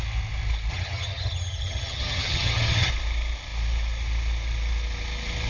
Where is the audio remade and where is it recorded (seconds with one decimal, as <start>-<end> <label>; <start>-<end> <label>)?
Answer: 0.0-0.7 recorded; 0.7-2.9 remade; 2.9-5.5 recorded